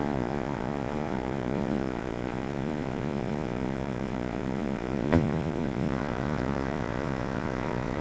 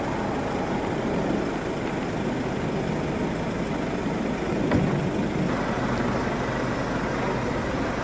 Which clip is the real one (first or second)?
second